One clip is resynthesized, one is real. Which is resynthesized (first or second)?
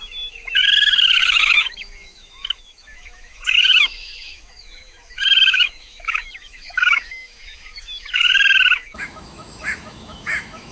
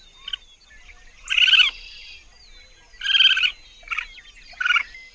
first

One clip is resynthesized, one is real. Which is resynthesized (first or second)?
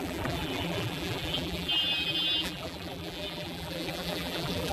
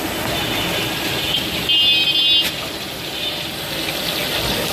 first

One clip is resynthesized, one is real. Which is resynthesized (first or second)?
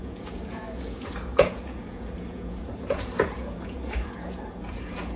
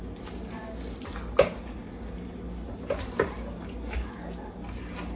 first